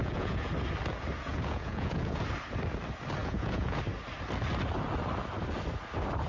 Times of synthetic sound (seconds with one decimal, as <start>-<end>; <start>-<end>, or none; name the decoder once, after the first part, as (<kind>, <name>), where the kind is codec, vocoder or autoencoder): 0.0-0.5 (vocoder, Vocos); 1.3-2.2; 3.2-3.8